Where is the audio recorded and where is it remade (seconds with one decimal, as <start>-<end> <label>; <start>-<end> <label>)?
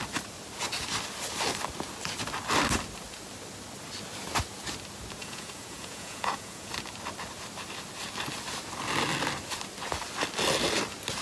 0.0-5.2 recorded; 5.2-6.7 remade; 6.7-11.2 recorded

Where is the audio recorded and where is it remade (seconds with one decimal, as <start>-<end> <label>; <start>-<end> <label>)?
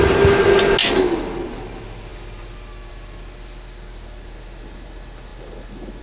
0.0-6.0 recorded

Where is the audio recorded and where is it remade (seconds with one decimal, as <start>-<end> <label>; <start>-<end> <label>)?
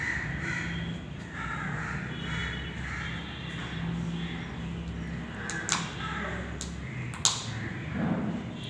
0.0-8.7 recorded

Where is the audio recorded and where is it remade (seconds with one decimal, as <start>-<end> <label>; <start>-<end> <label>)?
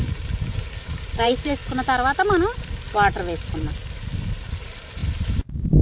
0.0-1.6 remade; 1.6-4.5 recorded; 4.5-5.8 remade